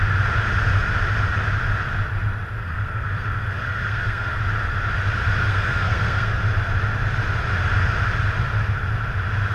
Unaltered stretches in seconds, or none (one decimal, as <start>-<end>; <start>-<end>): 0.0-2.6; 4.4-5.4; 6.4-9.5